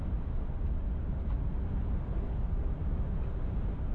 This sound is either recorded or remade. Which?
recorded